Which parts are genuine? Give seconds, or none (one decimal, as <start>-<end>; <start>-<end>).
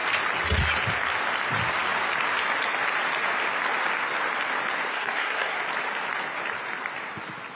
0.0-4.9; 5.6-7.6